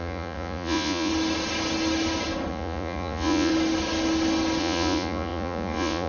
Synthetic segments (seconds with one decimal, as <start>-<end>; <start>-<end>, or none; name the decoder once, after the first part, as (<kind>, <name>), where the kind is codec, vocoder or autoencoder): 0.0-1.1 (vocoder, Vocos); 2.5-3.5; 4.6-6.1